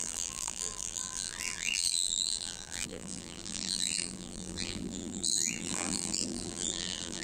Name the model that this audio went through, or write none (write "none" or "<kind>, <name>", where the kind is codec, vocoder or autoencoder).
vocoder, BigVGAN v2